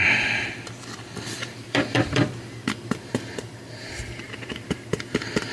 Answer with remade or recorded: remade